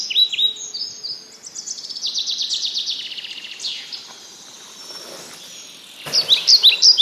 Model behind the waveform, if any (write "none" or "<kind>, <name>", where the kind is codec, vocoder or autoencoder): none